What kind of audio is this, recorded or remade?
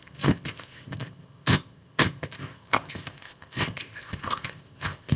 remade